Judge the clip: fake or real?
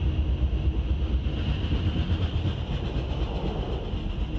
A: real